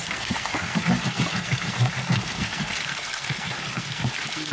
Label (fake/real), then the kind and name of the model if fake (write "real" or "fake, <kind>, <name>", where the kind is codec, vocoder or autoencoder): fake, codec, SNAC